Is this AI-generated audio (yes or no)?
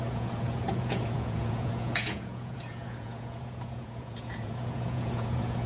yes